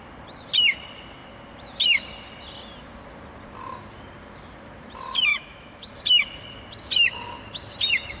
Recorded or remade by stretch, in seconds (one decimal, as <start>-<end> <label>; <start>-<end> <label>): 0.0-5.3 recorded; 5.3-5.9 remade; 5.9-8.2 recorded

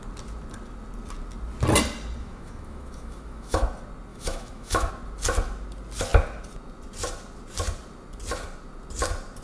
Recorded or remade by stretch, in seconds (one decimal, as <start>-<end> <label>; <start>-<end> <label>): 0.0-2.2 recorded; 2.2-3.6 remade; 3.6-4.1 recorded; 4.1-4.9 remade; 4.9-9.4 recorded

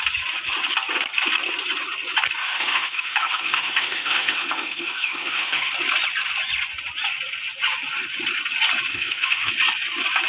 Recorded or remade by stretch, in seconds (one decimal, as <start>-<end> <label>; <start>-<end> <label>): 0.0-2.4 recorded; 2.4-5.7 remade; 5.7-8.9 recorded; 8.9-9.5 remade; 9.5-10.3 recorded

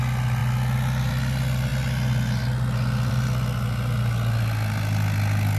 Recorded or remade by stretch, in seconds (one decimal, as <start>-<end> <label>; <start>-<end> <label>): 0.0-5.6 recorded

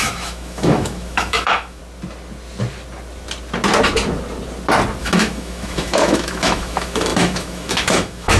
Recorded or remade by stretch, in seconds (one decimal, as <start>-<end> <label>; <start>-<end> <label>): 0.0-1.8 remade; 1.8-5.0 recorded; 5.0-8.4 remade

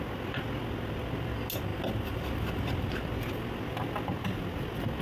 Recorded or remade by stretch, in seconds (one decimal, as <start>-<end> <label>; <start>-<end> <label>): 0.0-5.0 recorded

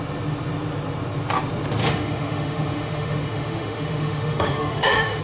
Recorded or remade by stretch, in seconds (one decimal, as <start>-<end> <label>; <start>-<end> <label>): 0.0-1.8 recorded; 1.8-5.2 remade